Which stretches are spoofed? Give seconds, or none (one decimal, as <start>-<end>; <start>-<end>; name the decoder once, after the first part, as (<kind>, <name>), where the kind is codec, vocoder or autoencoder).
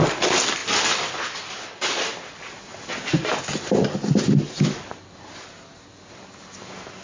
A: none